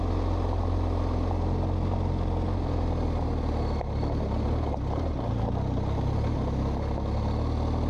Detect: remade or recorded recorded